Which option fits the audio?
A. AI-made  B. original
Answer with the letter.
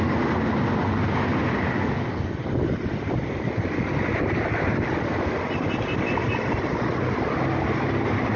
B